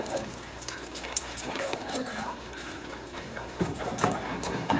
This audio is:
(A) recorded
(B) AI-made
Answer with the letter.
B